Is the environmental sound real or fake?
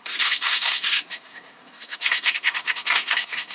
fake